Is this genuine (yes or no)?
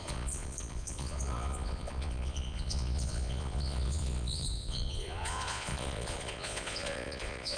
no